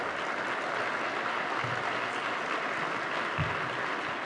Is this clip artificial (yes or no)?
no